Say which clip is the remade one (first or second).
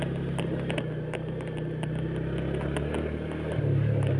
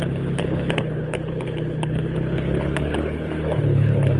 second